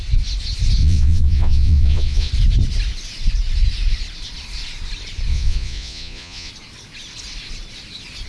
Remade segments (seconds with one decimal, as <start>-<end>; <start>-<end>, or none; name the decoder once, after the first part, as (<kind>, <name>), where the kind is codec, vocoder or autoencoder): 0.8-2.3 (vocoder, Vocos); 5.3-6.5